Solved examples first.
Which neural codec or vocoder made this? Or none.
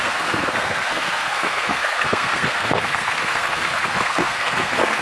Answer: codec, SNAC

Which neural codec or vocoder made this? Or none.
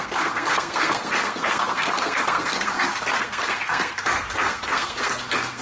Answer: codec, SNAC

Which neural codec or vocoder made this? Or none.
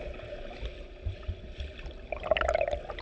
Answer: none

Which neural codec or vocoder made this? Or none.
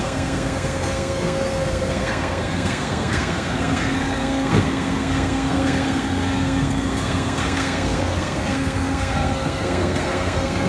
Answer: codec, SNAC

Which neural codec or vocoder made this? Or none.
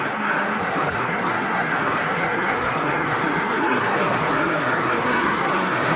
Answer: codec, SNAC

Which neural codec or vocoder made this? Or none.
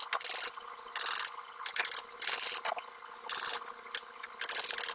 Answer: none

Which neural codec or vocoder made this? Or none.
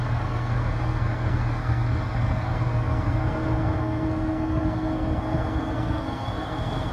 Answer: codec, SNAC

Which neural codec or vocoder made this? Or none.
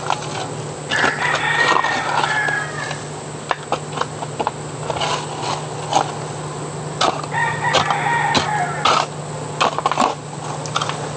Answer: none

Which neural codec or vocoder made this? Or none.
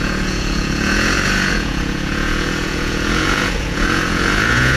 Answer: vocoder, Vocos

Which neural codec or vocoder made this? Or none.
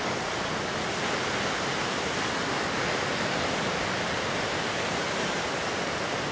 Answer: none